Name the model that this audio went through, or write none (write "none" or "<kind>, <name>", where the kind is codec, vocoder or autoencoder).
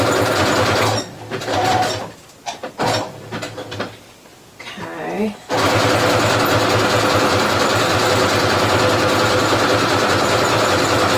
none